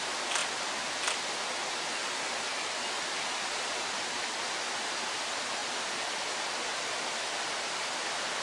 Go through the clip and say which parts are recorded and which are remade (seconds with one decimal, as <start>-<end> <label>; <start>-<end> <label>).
0.0-8.4 recorded

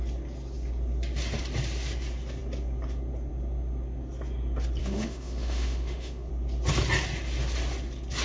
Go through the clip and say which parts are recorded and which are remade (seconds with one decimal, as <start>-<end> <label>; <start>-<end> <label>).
0.0-4.8 recorded; 4.8-6.3 remade; 6.3-8.2 recorded

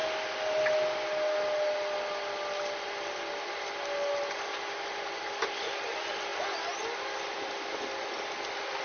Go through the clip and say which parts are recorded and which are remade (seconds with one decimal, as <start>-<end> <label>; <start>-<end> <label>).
0.0-8.8 recorded

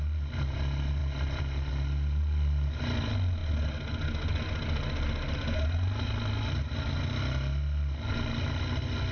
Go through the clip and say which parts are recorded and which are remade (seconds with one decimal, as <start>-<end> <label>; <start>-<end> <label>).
0.0-9.1 recorded

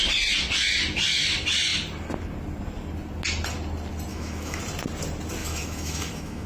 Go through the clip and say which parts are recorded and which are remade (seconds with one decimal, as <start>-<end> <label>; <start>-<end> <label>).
0.0-4.1 recorded; 4.1-4.6 remade; 4.6-5.4 recorded; 5.4-6.5 remade